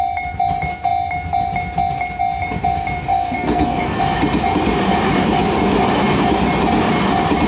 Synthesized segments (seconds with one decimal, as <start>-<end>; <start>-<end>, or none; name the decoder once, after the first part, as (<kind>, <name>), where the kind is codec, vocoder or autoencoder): 3.1-4.0 (codec, SNAC)